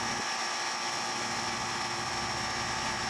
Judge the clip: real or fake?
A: real